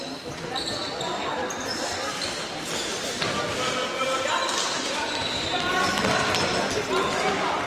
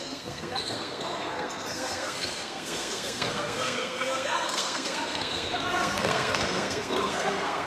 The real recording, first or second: first